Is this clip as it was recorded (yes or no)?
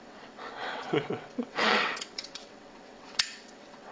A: no